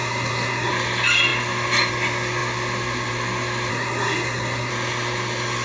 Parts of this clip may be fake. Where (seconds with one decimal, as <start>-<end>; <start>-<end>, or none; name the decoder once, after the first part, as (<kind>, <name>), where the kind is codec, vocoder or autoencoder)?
0.0-0.7 (codec, SNAC); 3.7-4.7